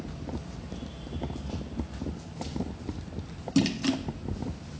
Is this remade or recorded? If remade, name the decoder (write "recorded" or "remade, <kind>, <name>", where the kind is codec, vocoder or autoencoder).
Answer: recorded